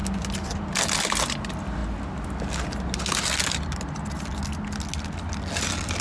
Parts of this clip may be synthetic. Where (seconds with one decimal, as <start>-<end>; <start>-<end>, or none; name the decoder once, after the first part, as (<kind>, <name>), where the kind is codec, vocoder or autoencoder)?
none